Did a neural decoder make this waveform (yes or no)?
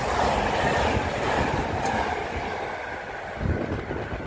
no